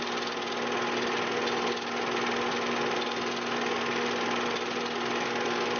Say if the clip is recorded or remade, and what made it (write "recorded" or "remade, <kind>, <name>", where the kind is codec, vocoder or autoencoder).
recorded